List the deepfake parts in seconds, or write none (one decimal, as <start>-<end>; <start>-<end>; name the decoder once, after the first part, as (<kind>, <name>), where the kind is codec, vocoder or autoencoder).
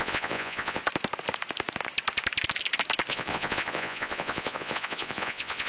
0.0-0.8 (vocoder, Vocos); 3.1-5.7